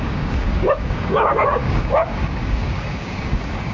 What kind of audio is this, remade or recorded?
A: remade